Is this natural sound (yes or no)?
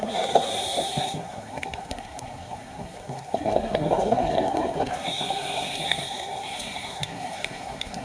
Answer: no